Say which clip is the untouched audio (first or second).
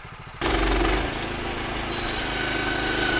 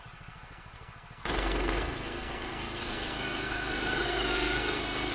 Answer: first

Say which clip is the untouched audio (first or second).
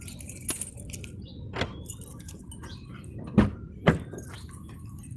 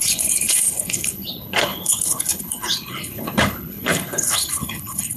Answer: first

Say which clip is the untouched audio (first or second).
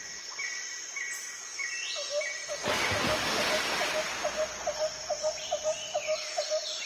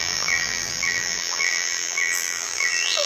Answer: first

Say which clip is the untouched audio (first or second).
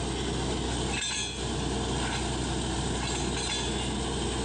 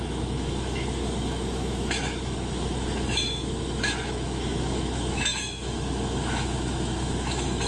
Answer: first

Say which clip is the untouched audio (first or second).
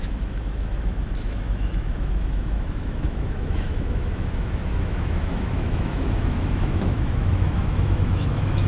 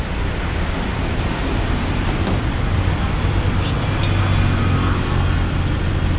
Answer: second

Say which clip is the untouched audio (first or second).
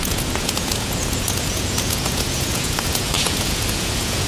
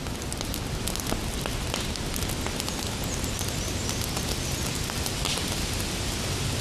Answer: second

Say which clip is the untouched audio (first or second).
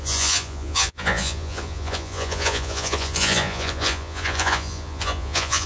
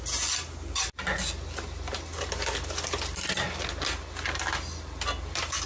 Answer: second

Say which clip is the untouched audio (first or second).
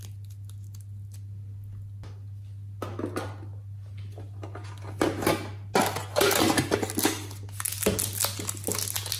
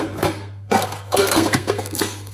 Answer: first